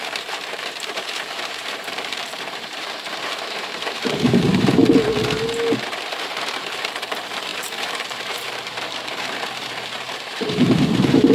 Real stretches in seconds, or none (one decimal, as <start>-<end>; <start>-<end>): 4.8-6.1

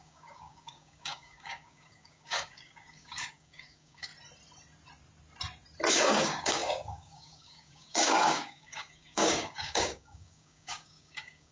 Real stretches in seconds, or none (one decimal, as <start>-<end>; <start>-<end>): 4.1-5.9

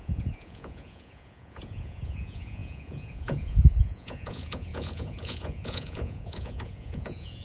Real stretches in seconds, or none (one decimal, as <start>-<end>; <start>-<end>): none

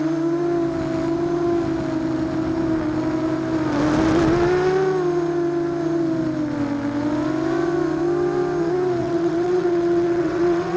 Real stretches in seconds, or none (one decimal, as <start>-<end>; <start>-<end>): 0.0-9.0

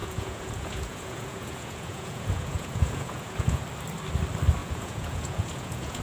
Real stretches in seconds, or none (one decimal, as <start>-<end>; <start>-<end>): 3.6-4.6

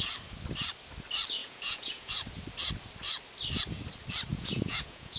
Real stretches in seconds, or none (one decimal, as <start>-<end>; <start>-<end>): 0.0-1.4; 2.1-4.3

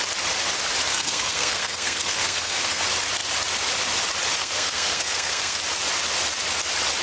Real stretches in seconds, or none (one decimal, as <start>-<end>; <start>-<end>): 0.0-0.9; 2.8-4.4; 5.6-7.0